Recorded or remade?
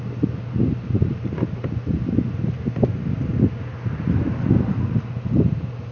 recorded